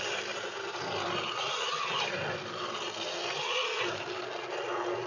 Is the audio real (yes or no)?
yes